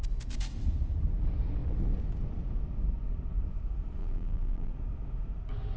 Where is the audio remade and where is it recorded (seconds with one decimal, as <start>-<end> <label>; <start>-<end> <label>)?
0.0-4.0 recorded; 4.0-4.7 remade; 4.7-5.8 recorded